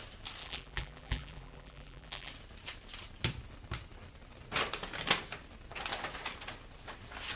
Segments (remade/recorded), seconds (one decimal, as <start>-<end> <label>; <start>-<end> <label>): 0.0-0.4 recorded; 0.4-2.3 remade; 2.3-7.4 recorded